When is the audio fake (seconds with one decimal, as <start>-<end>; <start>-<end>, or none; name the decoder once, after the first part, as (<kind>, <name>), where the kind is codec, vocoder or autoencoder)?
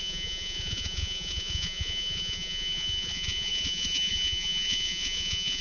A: 0.0-5.6 (vocoder, Vocos)